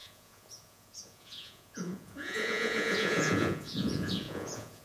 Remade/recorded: remade